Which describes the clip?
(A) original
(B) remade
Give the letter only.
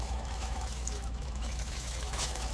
B